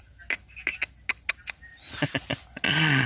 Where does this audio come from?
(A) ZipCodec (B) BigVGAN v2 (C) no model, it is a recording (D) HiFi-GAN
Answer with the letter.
C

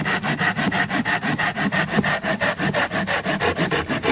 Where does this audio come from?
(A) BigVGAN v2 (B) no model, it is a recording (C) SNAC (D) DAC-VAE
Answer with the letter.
B